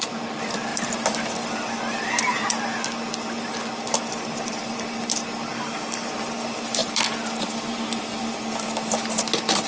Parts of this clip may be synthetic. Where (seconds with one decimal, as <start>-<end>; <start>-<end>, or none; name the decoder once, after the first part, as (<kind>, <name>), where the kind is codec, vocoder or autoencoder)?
5.5-6.1 (codec, DAC)